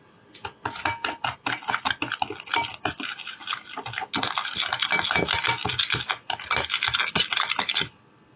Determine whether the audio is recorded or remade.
recorded